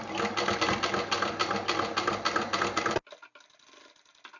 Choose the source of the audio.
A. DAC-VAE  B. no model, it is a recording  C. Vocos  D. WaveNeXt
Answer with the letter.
B